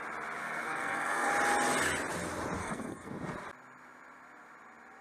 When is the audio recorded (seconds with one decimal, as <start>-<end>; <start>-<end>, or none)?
0.0-0.4; 1.3-2.6; 3.1-5.0